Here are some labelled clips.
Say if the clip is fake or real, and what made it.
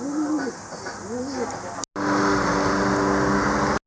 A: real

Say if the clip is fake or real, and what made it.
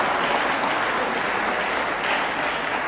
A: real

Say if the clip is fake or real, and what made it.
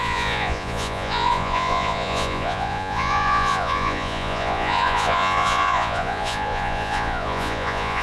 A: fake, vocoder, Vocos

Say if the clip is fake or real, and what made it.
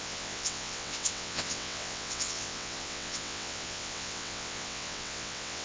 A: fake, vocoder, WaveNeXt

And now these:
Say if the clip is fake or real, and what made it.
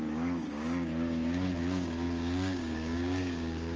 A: fake, codec, DAC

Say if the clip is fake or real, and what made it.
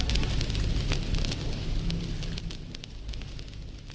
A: real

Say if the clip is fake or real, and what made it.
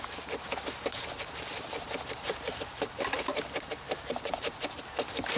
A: fake, vocoder, BigVGAN v2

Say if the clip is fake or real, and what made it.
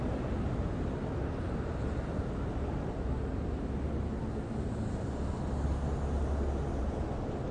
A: real